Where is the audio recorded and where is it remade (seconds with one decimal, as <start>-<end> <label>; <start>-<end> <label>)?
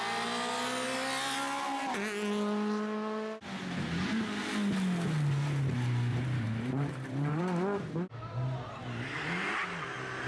0.0-6.1 recorded; 6.1-7.4 remade; 7.4-10.3 recorded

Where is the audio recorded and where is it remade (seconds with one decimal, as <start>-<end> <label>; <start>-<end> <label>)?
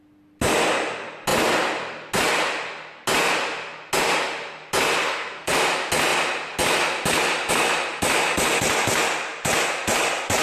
0.0-5.0 recorded; 5.0-5.5 remade; 5.5-10.4 recorded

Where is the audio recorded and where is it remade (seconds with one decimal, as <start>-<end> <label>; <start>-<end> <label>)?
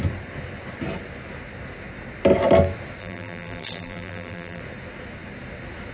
0.0-3.0 recorded; 3.0-4.6 remade; 4.6-5.9 recorded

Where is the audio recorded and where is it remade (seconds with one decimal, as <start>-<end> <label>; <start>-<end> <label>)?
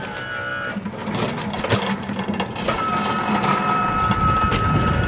0.0-5.1 recorded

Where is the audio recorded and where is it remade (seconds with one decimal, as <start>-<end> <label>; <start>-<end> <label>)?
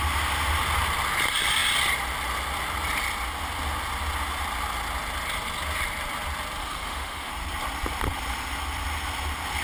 0.0-6.6 recorded; 6.6-7.3 remade; 7.3-9.6 recorded